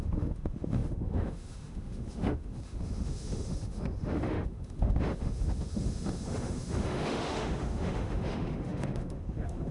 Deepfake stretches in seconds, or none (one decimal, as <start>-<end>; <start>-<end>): 0.0-9.7